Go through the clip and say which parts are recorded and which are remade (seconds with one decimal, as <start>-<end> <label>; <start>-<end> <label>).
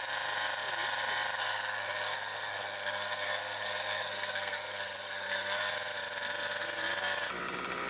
0.0-1.4 recorded; 1.4-5.7 remade; 5.7-7.9 recorded